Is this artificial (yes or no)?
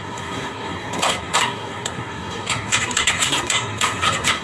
yes